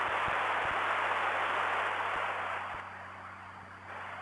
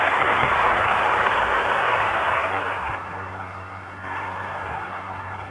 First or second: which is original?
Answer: first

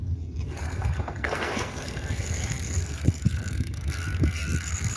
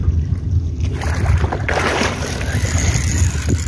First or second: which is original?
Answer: second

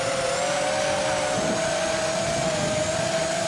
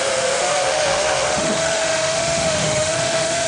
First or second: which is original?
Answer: first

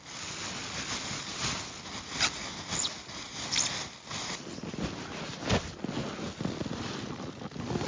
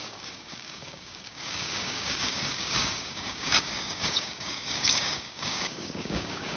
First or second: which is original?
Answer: first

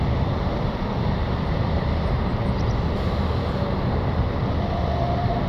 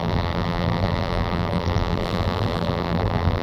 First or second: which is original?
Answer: first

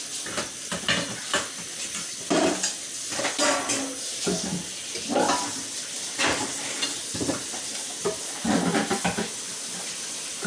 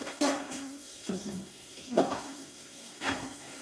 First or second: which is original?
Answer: first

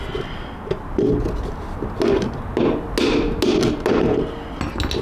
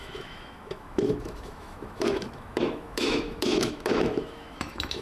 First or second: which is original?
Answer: first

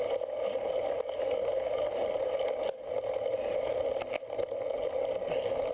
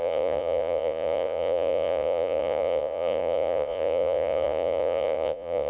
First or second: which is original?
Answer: first